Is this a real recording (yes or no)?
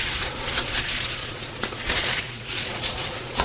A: no